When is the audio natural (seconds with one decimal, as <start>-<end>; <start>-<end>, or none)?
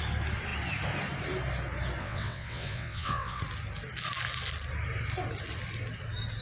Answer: 0.0-2.0; 3.4-6.4